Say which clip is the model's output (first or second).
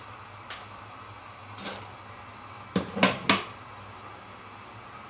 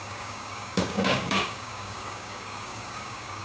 second